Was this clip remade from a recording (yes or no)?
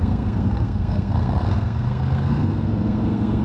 yes